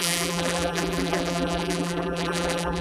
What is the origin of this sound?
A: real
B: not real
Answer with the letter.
B